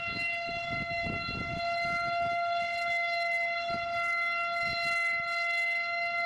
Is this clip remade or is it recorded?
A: recorded